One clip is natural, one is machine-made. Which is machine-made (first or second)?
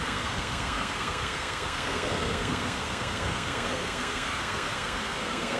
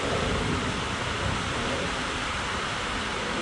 first